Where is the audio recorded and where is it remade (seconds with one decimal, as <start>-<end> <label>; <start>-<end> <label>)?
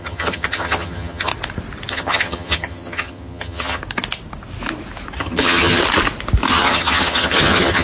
0.0-1.3 remade; 1.3-1.9 recorded; 1.9-3.8 remade; 3.8-5.2 recorded; 5.2-5.8 remade; 5.8-6.5 recorded; 6.5-7.8 remade